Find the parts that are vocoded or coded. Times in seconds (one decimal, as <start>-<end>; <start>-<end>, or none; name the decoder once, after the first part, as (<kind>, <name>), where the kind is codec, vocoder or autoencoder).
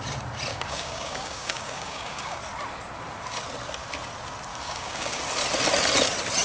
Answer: 0.5-2.4 (codec, DAC); 4.5-5.2